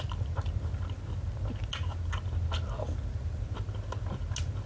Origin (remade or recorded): recorded